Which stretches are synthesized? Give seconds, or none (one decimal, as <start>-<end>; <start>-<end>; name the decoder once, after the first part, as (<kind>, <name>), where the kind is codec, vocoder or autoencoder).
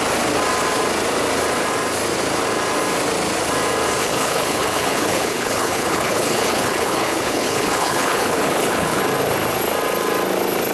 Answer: 4.0-9.0 (codec, HILCodec)